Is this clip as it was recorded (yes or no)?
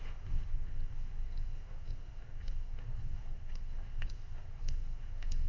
no